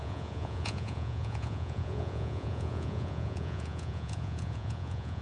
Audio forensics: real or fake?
fake